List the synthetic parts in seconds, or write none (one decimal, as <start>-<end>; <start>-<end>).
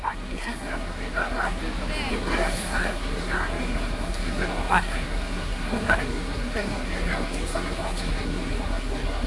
0.0-1.6; 2.1-9.3